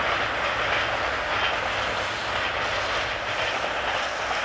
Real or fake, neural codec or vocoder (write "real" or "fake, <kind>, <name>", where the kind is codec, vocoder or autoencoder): real